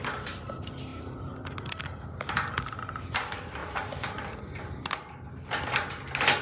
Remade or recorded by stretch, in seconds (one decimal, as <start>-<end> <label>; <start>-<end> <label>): 0.0-6.4 recorded